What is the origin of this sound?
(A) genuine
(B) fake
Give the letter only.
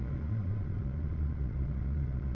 B